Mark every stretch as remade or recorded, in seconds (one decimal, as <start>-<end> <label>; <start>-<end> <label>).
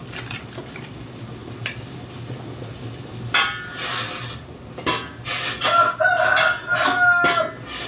0.0-7.9 recorded